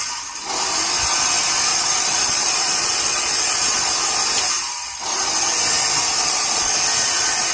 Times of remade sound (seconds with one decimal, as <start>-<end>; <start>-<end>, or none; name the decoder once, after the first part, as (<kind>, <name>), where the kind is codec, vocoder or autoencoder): 1.7-3.6 (vocoder, Vocos); 6.1-6.7